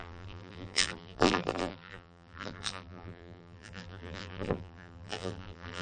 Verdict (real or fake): fake